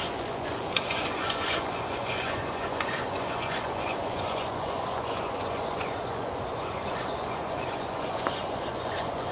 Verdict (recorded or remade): remade